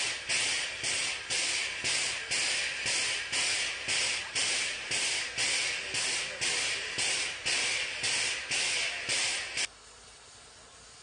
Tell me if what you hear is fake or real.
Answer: real